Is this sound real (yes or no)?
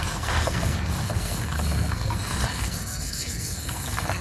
no